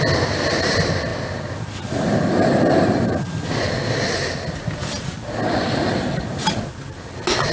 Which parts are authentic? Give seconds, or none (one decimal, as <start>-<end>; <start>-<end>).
0.0-7.5

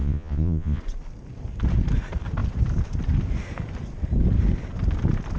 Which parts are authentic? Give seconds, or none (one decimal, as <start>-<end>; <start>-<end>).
0.8-5.4

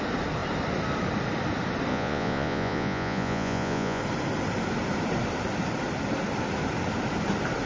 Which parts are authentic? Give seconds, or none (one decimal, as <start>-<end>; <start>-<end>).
0.0-1.9; 4.0-7.7

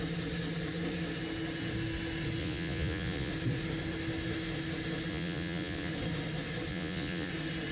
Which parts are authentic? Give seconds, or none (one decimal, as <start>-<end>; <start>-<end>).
0.0-2.4; 3.3-5.1; 5.9-6.7; 7.3-7.7

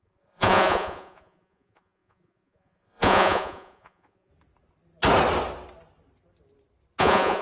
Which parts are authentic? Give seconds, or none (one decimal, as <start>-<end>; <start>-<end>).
4.3-7.0

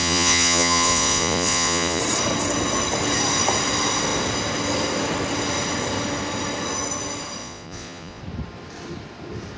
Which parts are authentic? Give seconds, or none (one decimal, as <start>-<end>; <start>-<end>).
2.0-7.4; 8.2-9.6